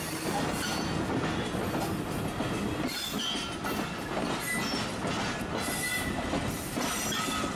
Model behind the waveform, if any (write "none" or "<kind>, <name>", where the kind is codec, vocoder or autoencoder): none